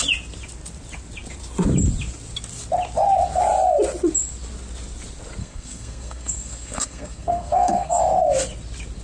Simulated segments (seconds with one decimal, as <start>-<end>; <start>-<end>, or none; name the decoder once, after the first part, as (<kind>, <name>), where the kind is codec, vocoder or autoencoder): 5.4-8.0 (codec, SNAC)